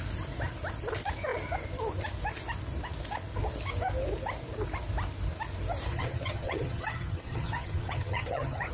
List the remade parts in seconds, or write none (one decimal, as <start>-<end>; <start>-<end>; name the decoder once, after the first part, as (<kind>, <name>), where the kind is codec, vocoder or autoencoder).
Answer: 5.9-8.7 (vocoder, HiFi-GAN)